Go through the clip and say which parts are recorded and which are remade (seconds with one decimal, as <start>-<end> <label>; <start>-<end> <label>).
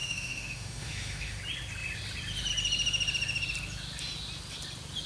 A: 0.0-1.4 remade; 1.4-5.1 recorded